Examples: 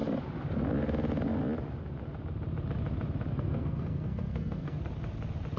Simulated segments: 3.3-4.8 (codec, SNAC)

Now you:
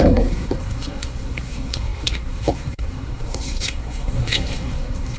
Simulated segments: 0.0-5.2 (codec, SNAC)

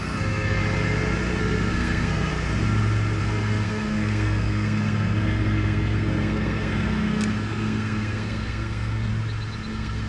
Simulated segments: 0.0-0.6 (codec, SNAC); 1.4-2.3; 3.2-9.1; 9.7-10.1

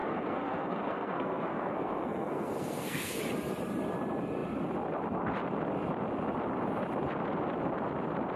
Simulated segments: 0.0-3.2 (codec, SNAC)